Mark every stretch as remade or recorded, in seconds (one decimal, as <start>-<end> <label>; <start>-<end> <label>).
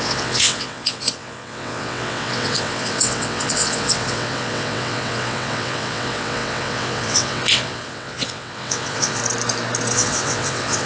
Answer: 0.0-9.2 remade; 9.2-9.9 recorded; 9.9-10.8 remade